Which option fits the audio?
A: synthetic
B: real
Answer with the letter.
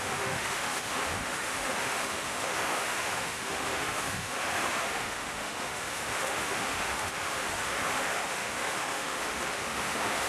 A